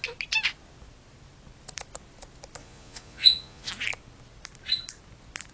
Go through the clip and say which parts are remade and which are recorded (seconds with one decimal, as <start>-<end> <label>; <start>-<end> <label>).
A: 0.0-2.6 recorded; 2.6-3.7 remade; 3.7-5.5 recorded